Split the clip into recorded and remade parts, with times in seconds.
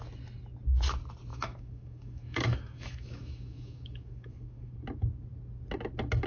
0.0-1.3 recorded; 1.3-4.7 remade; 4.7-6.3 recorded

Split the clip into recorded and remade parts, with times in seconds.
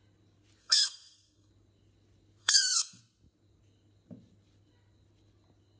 0.0-0.6 recorded; 0.6-1.5 remade; 1.5-2.4 recorded; 2.4-3.0 remade; 3.0-5.8 recorded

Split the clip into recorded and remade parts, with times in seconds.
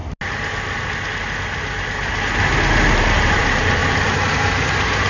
0.0-2.9 recorded; 2.9-3.8 remade; 3.8-4.5 recorded; 4.5-5.1 remade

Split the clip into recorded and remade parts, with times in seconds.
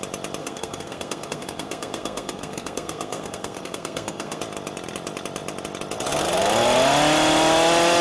0.0-0.4 recorded; 0.4-4.4 remade; 4.4-8.0 recorded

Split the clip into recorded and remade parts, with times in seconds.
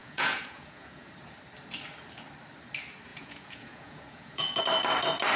0.0-1.1 remade; 1.1-3.1 recorded; 3.1-4.6 remade; 4.6-5.4 recorded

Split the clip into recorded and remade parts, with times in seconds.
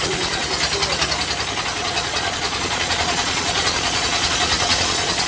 0.0-0.4 remade; 0.4-1.6 recorded; 1.6-5.3 remade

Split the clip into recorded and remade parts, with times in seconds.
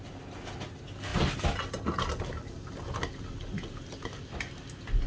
0.0-5.1 recorded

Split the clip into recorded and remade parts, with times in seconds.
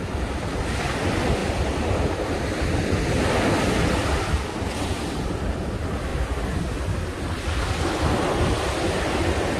0.0-9.6 recorded